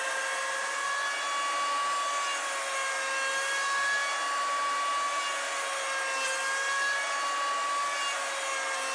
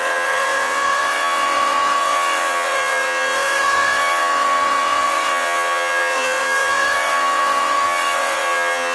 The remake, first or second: second